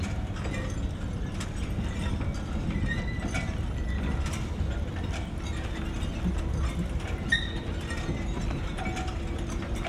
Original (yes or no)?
yes